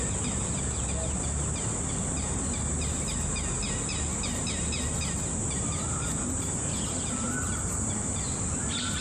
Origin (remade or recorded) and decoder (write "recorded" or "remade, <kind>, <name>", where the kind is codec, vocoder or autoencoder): recorded